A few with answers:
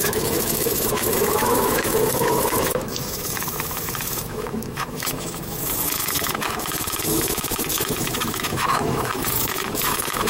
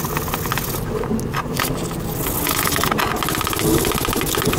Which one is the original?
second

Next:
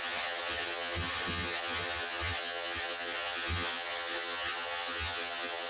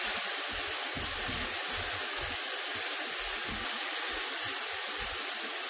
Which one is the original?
second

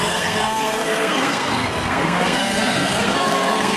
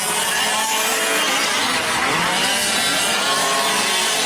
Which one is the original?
second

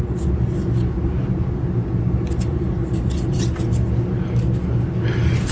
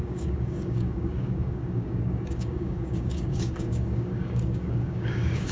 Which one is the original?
first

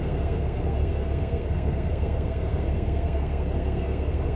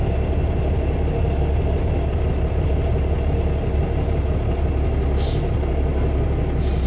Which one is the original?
second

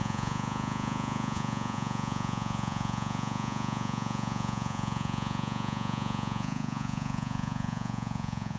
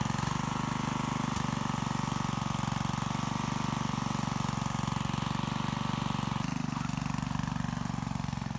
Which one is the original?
second